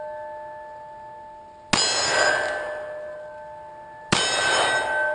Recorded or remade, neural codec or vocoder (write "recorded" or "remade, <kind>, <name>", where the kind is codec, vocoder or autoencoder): recorded